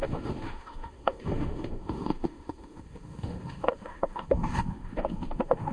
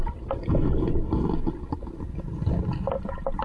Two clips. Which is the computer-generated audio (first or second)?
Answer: first